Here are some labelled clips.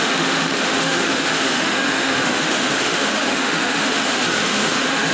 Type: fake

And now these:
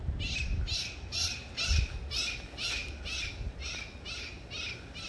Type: real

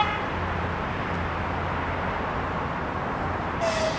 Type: real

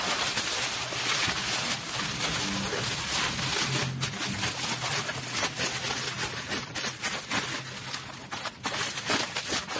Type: real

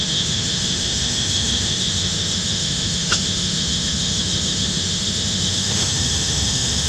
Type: fake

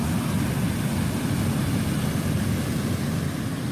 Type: real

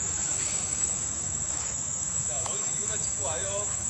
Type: fake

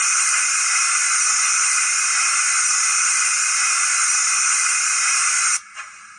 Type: real